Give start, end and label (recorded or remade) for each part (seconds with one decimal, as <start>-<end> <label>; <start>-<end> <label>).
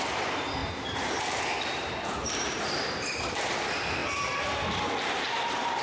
0.0-4.0 remade; 4.0-5.1 recorded; 5.1-5.8 remade